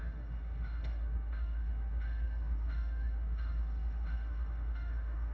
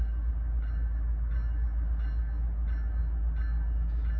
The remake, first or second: first